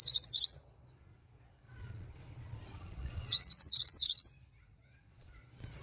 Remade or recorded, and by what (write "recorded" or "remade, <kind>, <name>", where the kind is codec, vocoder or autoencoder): remade, vocoder, Vocos